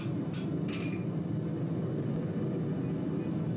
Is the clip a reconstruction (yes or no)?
no